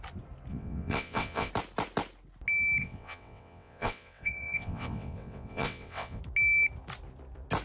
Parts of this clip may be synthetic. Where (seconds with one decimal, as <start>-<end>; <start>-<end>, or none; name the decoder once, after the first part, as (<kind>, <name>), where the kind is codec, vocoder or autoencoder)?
0.5-1.5 (vocoder, WaveNeXt); 2.8-6.2